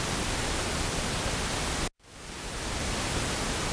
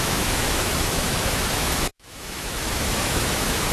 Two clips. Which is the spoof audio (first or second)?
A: second